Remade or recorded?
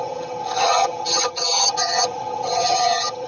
remade